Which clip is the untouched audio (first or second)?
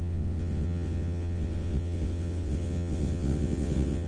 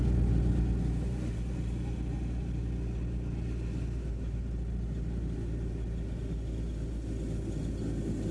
second